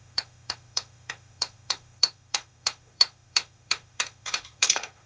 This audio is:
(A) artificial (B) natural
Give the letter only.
A